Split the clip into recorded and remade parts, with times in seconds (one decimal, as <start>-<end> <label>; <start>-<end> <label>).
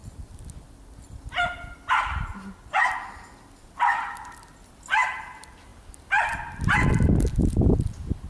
0.0-8.3 recorded